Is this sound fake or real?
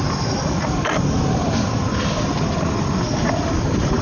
real